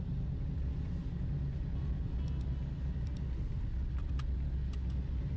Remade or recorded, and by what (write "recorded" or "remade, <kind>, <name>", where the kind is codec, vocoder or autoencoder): recorded